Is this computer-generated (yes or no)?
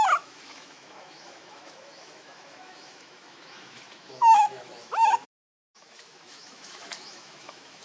yes